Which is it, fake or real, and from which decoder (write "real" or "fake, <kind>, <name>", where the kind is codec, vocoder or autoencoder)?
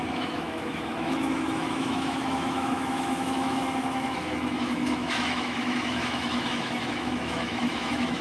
fake, autoencoder, DAC-VAE